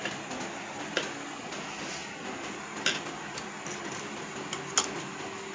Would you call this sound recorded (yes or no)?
yes